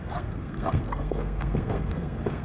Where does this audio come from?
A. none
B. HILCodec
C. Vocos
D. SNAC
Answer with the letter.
D